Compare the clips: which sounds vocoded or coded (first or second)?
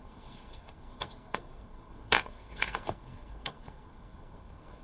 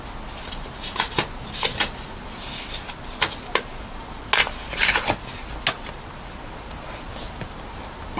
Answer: first